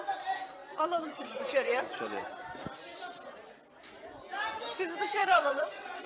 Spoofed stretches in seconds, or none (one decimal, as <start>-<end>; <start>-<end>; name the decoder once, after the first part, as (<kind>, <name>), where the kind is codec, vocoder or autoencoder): 0.6-1.8 (vocoder, WaveNeXt); 5.2-6.1